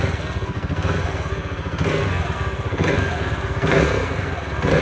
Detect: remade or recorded remade